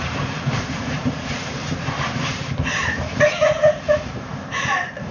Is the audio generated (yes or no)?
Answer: yes